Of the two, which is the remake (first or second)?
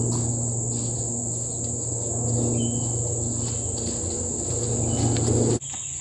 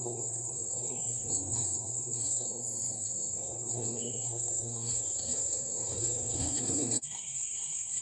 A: second